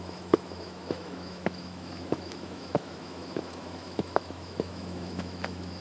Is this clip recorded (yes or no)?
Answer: no